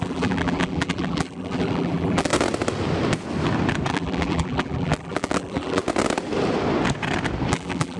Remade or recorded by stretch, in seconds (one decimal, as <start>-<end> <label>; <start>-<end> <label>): 0.0-2.3 remade; 2.3-3.9 recorded; 3.9-5.8 remade; 5.8-7.5 recorded; 7.5-8.0 remade